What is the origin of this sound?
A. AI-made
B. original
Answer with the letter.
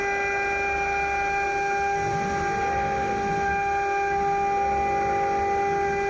B